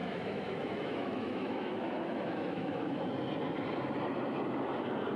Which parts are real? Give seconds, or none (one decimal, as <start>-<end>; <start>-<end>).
3.1-5.2